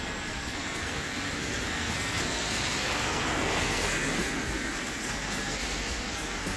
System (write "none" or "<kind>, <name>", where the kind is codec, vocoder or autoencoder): codec, SNAC